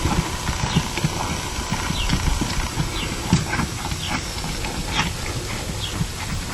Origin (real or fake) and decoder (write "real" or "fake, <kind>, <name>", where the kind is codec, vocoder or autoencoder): real